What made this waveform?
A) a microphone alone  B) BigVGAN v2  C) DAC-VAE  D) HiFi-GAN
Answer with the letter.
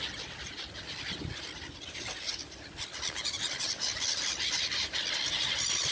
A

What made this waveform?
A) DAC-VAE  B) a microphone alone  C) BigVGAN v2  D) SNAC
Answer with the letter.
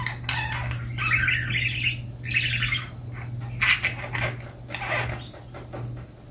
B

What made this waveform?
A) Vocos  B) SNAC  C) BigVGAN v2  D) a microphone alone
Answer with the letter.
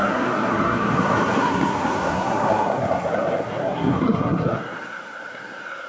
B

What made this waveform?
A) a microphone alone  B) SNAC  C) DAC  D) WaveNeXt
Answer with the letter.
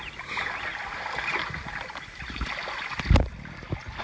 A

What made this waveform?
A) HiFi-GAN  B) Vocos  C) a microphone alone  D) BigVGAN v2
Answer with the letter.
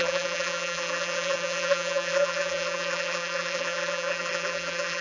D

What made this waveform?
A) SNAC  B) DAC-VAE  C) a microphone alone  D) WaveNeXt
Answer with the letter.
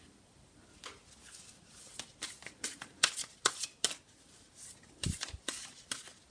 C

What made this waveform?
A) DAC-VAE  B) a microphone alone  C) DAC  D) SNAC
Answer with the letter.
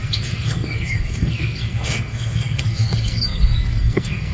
D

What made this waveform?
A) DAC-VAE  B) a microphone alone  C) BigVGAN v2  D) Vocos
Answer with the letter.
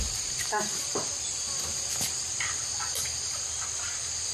C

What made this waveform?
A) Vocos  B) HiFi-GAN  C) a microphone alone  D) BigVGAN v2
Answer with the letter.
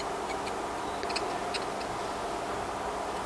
C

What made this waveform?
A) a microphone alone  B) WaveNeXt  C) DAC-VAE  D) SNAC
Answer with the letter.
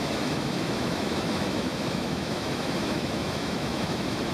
C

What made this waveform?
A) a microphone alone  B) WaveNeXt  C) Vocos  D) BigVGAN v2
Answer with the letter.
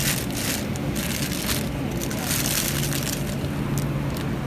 A